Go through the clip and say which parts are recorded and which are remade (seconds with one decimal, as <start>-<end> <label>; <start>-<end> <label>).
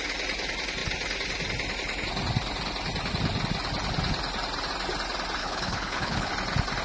0.0-5.4 recorded; 5.4-6.3 remade; 6.3-6.8 recorded